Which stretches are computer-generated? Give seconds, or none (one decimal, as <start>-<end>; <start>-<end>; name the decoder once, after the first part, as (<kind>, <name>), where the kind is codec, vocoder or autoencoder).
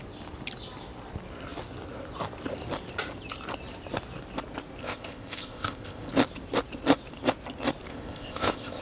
4.8-6.1 (codec, ZipCodec); 7.9-8.8